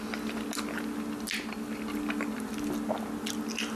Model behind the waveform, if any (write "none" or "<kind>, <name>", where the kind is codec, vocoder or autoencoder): none